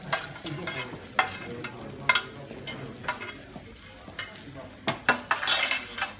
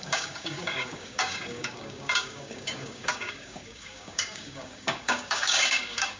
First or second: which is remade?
second